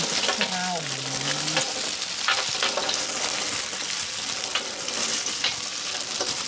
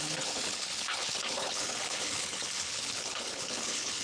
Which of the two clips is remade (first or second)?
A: second